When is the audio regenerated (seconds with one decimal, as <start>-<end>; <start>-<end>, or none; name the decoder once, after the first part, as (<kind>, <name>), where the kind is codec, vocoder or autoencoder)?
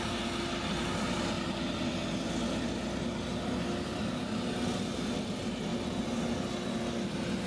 none